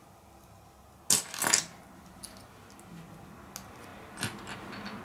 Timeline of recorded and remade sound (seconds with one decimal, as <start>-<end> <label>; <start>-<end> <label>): 0.0-5.0 recorded